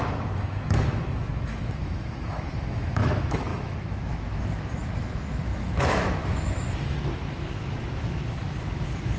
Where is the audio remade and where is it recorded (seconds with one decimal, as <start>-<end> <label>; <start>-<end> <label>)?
0.0-9.2 remade